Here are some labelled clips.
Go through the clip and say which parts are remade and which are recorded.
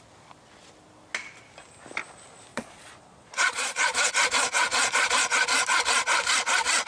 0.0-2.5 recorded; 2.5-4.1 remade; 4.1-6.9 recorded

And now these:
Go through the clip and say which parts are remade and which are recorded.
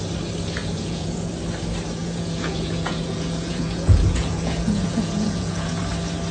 0.0-0.6 recorded; 0.6-1.3 remade; 1.3-2.0 recorded; 2.0-5.8 remade; 5.8-6.3 recorded